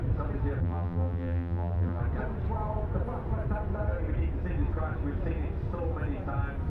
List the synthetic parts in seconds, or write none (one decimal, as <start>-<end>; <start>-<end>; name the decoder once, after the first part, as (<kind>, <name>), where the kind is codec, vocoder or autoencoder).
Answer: 0.6-2.0 (vocoder, BigVGAN v2)